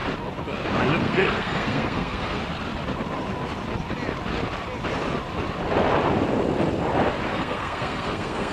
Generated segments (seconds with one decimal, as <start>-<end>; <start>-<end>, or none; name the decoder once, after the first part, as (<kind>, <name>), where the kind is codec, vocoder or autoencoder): 1.0-2.4 (codec, SNAC); 7.3-8.5